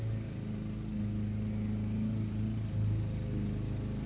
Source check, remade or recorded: recorded